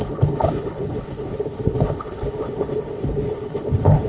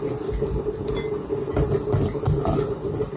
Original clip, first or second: second